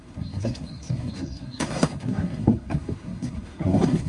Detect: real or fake fake